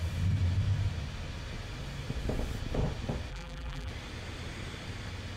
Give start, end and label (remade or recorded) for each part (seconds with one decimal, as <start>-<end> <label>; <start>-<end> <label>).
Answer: 0.0-3.3 recorded; 3.3-3.9 remade; 3.9-5.4 recorded